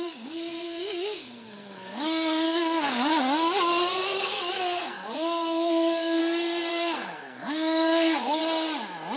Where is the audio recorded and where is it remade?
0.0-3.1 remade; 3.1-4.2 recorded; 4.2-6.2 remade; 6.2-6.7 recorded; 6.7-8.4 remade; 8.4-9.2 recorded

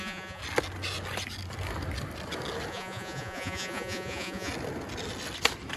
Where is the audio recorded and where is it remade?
0.0-0.4 remade; 0.4-2.7 recorded; 2.7-4.5 remade; 4.5-5.8 recorded

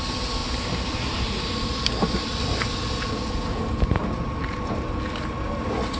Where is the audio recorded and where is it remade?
0.0-6.0 recorded

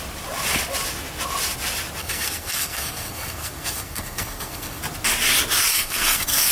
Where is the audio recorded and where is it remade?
0.0-2.0 recorded; 2.0-4.8 remade; 4.8-5.7 recorded; 5.7-6.5 remade

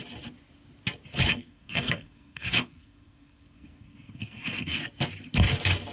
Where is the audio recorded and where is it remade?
0.0-1.3 recorded; 1.3-4.8 remade; 4.8-5.9 recorded

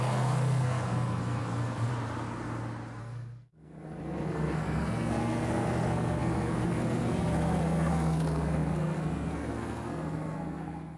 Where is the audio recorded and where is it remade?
0.0-1.9 remade; 1.9-3.0 recorded; 3.0-11.0 remade

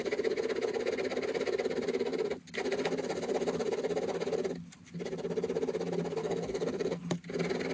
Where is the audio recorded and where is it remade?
0.0-6.2 recorded; 6.2-7.0 remade; 7.0-7.7 recorded